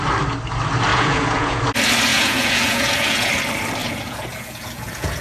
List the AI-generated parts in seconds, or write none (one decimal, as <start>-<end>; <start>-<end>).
0.9-1.6; 2.1-3.3; 3.8-5.2

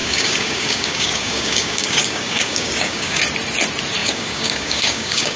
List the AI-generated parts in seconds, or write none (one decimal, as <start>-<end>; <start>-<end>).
0.0-3.2; 4.0-5.4

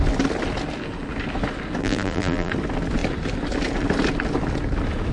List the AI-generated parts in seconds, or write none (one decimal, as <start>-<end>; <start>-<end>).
1.8-2.5

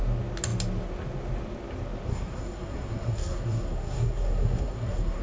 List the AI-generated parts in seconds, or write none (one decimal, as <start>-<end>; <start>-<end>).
2.1-5.2

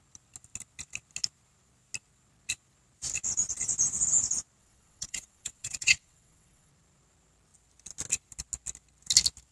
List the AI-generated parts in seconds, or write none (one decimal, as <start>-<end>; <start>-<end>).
4.6-6.7

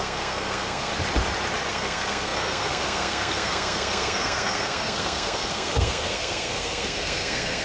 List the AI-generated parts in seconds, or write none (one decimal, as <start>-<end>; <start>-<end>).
0.0-0.9; 1.7-7.6

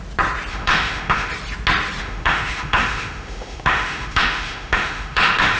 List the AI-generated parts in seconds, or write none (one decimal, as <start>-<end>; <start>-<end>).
0.5-1.3; 2.0-5.6